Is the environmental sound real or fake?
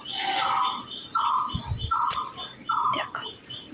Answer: real